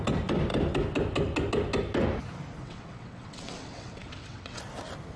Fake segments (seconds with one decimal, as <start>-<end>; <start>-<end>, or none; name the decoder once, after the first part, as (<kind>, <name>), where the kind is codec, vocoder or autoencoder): 2.6-4.6 (vocoder, WaveNeXt)